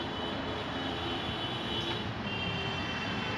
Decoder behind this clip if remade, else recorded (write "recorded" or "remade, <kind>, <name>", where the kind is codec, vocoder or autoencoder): recorded